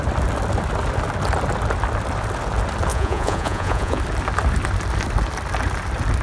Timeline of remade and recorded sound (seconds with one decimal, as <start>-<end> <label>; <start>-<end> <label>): 0.0-2.9 recorded; 2.9-4.0 remade; 4.0-6.2 recorded